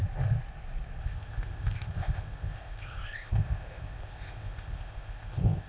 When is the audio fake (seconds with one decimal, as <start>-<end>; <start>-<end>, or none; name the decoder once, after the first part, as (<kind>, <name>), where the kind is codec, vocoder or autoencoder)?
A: 1.0-5.7 (codec, ZipCodec)